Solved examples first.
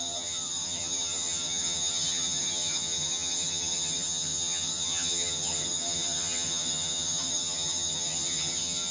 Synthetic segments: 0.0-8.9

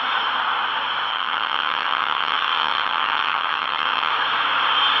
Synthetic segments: 1.1-4.1

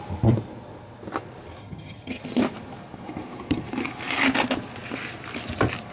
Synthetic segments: 1.6-2.2

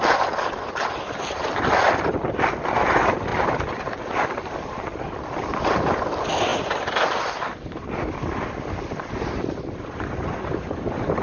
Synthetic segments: none

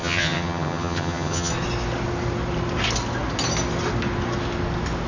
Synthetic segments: 0.0-1.5